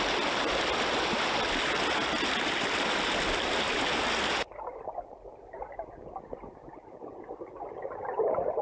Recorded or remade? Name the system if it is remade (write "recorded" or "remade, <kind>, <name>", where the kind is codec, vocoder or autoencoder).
recorded